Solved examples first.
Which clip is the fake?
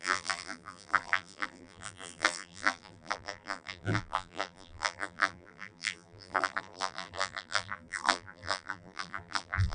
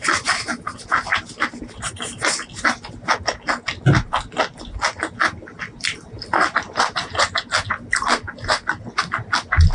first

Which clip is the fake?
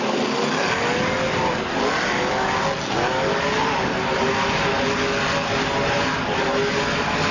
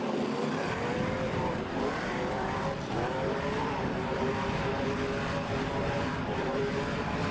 second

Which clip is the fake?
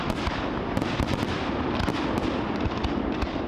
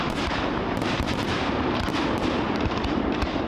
second